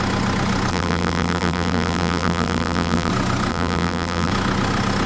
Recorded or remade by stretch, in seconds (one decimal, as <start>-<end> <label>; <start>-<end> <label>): 0.0-0.7 recorded; 0.7-3.1 remade; 3.1-3.5 recorded; 3.5-4.3 remade; 4.3-5.1 recorded

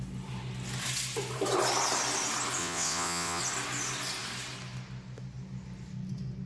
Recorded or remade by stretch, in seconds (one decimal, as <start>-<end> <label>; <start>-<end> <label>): 0.0-2.6 recorded; 2.6-3.4 remade; 3.4-6.5 recorded

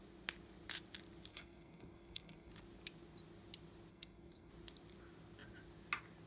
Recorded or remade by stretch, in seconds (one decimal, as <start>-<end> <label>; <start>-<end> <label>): 0.0-1.3 recorded; 1.3-2.5 remade; 2.5-3.9 recorded; 3.9-4.5 remade; 4.5-6.3 recorded

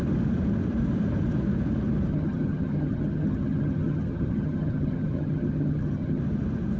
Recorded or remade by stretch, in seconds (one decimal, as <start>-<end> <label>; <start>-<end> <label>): 0.0-2.1 recorded; 2.1-6.2 remade; 6.2-6.8 recorded

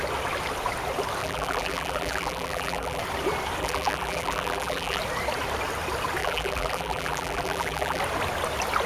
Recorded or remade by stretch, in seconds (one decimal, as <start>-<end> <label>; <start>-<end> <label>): 0.0-1.2 recorded; 1.2-3.0 remade; 3.0-3.6 recorded; 3.6-5.0 remade; 5.0-6.2 recorded; 6.2-8.0 remade; 8.0-8.9 recorded

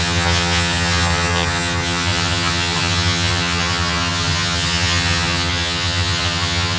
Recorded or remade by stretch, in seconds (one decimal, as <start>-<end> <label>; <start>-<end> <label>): 0.0-6.8 remade

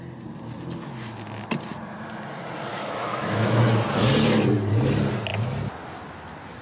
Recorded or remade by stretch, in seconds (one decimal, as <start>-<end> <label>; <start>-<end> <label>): 0.0-2.7 recorded; 2.7-3.6 remade; 3.6-6.6 recorded

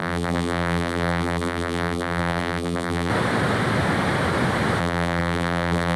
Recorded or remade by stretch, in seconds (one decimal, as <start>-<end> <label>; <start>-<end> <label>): 0.0-3.1 remade; 3.1-4.8 recorded; 4.8-6.0 remade